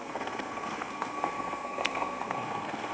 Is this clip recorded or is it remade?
remade